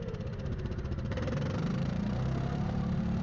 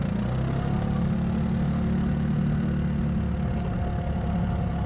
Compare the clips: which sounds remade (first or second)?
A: first